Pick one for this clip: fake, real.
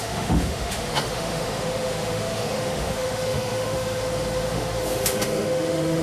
fake